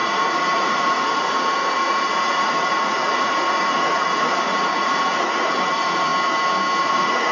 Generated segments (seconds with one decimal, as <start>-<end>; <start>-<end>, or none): 0.0-6.1; 6.8-7.3